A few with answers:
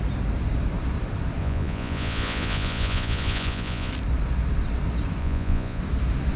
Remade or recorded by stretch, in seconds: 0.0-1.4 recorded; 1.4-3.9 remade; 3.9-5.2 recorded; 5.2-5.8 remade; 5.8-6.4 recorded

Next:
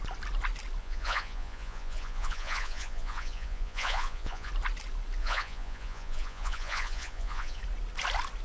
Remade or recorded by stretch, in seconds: 0.0-0.8 recorded; 0.8-4.5 remade; 4.5-5.2 recorded; 5.2-7.6 remade; 7.6-8.4 recorded

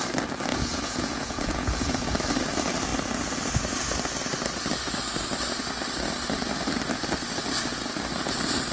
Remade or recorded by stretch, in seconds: 0.0-0.5 recorded; 0.5-2.1 remade; 2.1-8.7 recorded

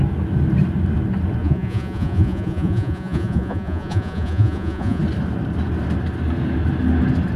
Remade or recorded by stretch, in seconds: 0.0-1.4 recorded; 1.4-5.0 remade; 5.0-7.4 recorded

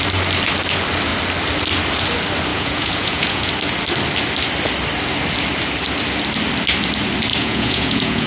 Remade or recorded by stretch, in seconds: 0.0-2.5 recorded; 2.5-3.5 remade; 3.5-7.3 recorded; 7.3-8.3 remade

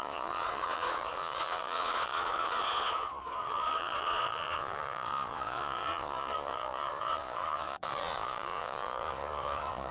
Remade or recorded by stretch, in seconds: 0.0-9.9 remade